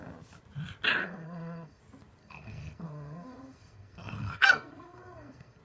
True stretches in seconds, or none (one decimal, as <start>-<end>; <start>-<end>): 0.0-1.0; 1.8-2.2